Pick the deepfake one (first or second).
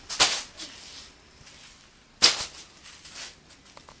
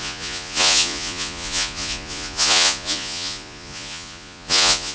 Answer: second